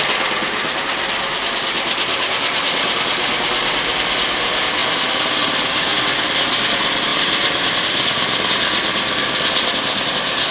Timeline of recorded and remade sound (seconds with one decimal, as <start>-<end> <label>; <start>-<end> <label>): 0.0-10.5 recorded